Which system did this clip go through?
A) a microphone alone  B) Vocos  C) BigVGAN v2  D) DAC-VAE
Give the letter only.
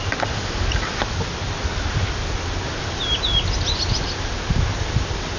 A